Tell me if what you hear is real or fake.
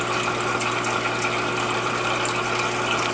real